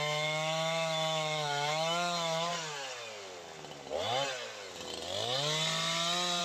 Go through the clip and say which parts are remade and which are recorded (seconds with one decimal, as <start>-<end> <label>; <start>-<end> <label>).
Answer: 0.0-2.5 remade; 2.5-6.4 recorded